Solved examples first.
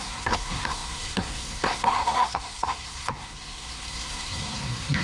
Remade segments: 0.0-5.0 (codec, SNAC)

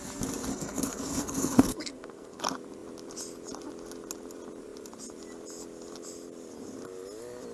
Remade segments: 0.5-2.4 (codec, SNAC)

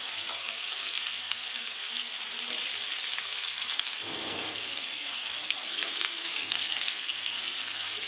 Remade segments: 0.0-2.1 (codec, SNAC); 3.2-8.1